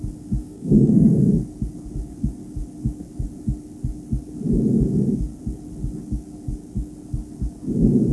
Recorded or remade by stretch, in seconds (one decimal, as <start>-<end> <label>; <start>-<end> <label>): 0.0-0.4 recorded; 0.4-1.3 remade; 1.3-8.1 recorded